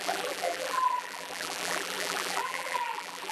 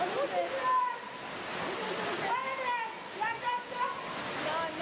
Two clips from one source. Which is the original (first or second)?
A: second